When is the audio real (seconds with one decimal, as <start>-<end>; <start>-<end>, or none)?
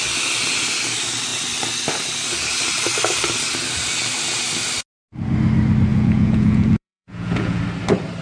0.0-5.9; 7.6-8.2